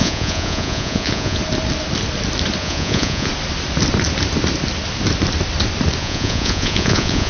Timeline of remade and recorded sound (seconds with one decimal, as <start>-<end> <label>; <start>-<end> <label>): 0.0-1.4 remade; 1.4-2.6 recorded; 2.6-3.3 remade; 3.3-6.0 recorded; 6.0-7.3 remade